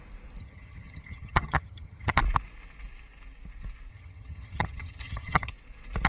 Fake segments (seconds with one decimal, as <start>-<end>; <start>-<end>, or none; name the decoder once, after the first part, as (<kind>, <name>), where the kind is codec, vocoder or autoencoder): 0.4-2.2 (vocoder, HiFi-GAN); 3.9-5.5

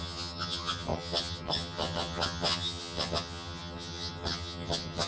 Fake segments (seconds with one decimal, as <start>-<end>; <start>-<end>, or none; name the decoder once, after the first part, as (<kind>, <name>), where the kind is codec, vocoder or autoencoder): 0.0-5.1 (vocoder, HiFi-GAN)

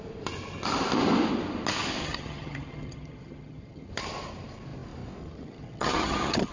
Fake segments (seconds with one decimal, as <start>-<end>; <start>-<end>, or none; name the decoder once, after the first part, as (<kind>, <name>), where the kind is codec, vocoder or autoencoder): 2.0-3.9 (vocoder, HiFi-GAN); 5.2-6.5

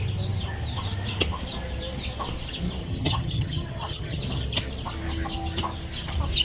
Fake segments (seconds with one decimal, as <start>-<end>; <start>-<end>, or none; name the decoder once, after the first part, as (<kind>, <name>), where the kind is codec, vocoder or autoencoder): 2.8-4.2 (vocoder, HiFi-GAN)

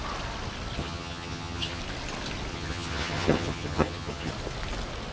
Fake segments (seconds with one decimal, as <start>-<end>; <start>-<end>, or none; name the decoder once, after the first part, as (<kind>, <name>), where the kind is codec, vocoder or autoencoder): 0.8-1.8 (vocoder, HiFi-GAN); 2.5-4.3